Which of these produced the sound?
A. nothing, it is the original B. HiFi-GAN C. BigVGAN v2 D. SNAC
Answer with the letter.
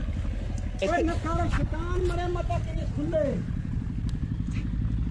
A